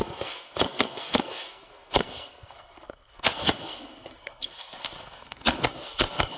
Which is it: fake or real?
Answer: fake